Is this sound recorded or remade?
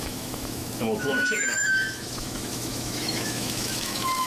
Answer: remade